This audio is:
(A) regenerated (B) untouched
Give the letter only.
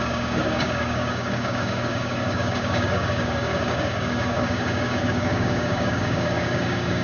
A